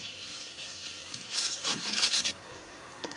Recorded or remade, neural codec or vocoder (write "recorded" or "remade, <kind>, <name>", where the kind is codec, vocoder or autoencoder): remade, codec, SNAC